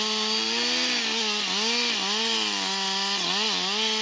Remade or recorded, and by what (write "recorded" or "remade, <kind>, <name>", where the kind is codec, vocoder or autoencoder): recorded